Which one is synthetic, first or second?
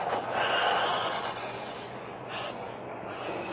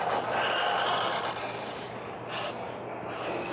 first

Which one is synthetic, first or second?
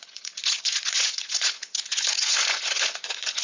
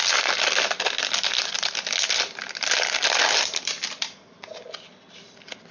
first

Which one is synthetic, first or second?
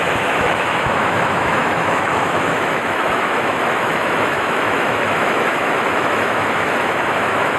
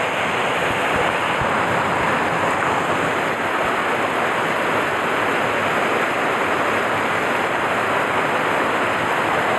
first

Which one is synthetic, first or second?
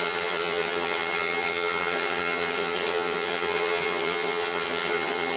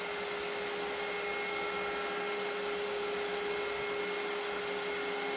first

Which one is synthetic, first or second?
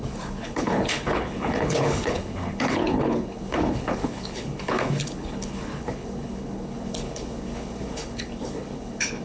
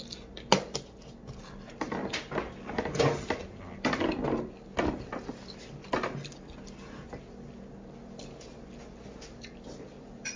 first